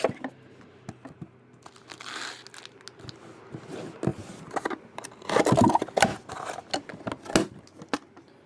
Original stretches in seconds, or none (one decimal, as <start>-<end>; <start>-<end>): 0.0-4.1; 5.7-8.5